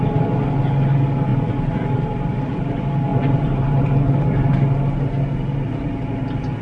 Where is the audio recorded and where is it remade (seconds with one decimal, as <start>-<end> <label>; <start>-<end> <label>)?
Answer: 0.0-1.3 recorded; 1.3-2.4 remade; 2.4-3.1 recorded; 3.1-3.7 remade; 3.7-6.6 recorded